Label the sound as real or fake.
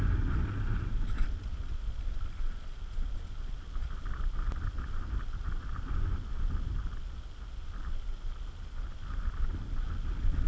real